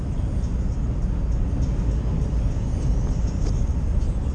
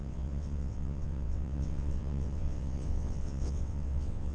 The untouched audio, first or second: first